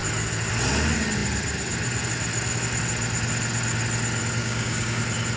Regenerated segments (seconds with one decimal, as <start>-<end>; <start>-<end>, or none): 4.4-5.0